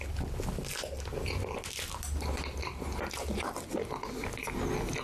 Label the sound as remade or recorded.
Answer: recorded